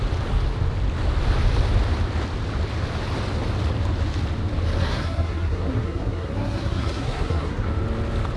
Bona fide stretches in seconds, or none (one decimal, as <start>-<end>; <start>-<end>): 0.0-4.8; 7.7-8.4